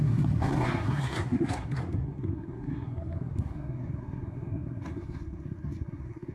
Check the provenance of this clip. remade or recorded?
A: remade